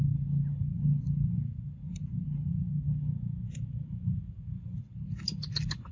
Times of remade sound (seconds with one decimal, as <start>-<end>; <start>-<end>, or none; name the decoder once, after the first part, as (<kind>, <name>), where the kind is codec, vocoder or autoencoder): 2.5-4.3 (autoencoder, DAC-VAE)